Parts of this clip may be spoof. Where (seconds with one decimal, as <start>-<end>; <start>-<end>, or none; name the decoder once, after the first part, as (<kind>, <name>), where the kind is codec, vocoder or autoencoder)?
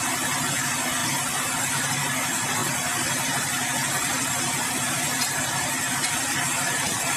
none